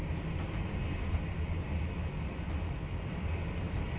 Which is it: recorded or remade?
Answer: recorded